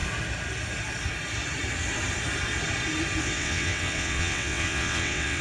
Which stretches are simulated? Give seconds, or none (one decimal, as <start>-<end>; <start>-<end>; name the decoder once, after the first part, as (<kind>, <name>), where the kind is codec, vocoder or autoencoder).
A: 3.2-5.4 (vocoder, WaveNeXt)